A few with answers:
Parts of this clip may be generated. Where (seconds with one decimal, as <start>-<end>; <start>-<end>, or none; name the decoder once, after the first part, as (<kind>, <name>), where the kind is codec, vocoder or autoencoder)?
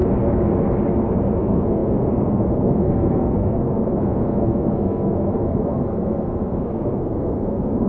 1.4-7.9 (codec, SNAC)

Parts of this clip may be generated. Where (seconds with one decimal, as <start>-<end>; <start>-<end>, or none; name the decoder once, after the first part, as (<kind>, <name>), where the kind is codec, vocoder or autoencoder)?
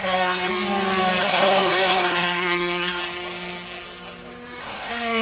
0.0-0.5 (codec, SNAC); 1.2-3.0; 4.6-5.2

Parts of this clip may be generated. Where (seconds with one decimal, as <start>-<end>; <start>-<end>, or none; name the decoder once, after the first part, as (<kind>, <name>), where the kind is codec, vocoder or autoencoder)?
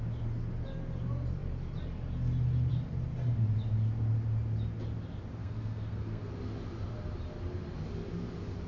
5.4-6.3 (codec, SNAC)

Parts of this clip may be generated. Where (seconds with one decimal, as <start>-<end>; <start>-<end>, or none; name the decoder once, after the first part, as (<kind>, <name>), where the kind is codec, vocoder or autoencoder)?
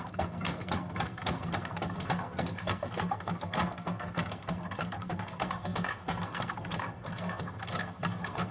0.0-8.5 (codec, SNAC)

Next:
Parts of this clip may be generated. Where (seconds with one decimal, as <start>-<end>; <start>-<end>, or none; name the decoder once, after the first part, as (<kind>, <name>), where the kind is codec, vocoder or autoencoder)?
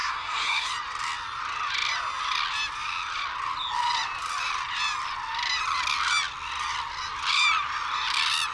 0.0-0.7 (codec, SNAC)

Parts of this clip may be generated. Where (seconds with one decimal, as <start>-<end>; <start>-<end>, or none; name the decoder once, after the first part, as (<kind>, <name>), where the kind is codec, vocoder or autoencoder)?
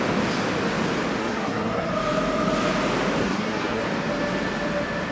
1.2-1.9 (codec, SNAC); 3.2-3.8